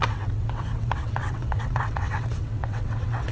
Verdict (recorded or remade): remade